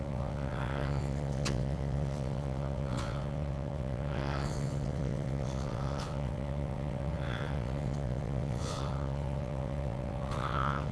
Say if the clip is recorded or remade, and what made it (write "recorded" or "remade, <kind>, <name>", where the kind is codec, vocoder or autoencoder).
remade, vocoder, WaveNeXt